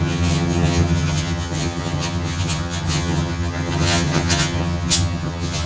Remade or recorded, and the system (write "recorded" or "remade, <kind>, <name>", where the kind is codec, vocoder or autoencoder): remade, vocoder, HiFi-GAN